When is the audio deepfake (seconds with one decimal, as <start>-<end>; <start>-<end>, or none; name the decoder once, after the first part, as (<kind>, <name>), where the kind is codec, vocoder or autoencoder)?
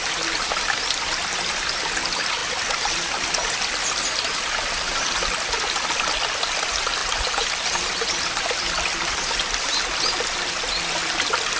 none